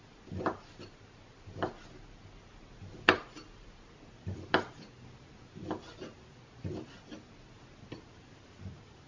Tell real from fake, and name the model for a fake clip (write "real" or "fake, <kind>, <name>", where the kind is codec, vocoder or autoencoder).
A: real